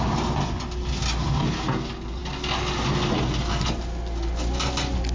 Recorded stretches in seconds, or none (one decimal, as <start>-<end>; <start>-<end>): 0.0-5.1